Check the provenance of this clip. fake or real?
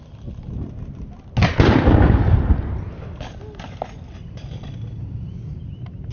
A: real